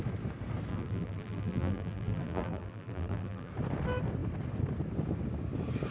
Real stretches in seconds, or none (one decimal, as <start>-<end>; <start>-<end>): 0.0-0.7; 3.5-5.9